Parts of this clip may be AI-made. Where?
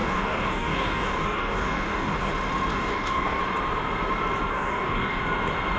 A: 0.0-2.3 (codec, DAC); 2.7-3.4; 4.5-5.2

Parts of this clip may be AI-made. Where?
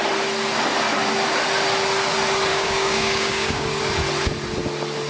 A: 2.5-3.8 (codec, DAC)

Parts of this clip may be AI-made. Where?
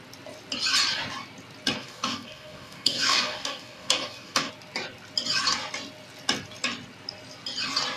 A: 1.8-4.5 (codec, DAC)